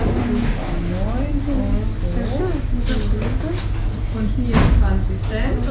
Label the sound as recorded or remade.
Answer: recorded